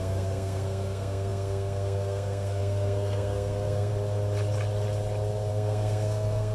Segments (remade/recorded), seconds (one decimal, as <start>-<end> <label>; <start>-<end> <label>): 0.0-3.9 remade; 3.9-5.5 recorded; 5.5-6.5 remade